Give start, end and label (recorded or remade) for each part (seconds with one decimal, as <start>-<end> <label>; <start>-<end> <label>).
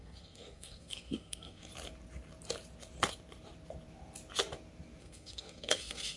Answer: 0.0-1.7 remade; 1.7-5.0 recorded; 5.0-6.2 remade